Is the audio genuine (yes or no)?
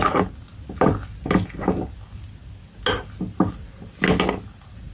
yes